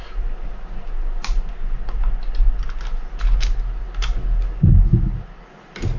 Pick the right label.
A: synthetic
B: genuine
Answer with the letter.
B